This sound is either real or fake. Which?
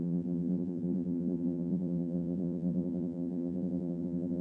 fake